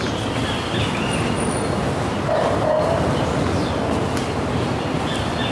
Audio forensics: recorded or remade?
recorded